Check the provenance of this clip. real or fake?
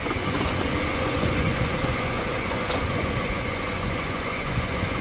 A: fake